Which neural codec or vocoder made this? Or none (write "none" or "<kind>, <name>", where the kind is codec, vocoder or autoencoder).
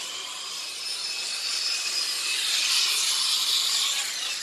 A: vocoder, BigVGAN v2